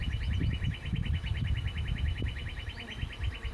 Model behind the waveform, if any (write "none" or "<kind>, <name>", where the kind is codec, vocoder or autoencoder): none